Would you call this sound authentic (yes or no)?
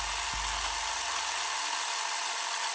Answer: yes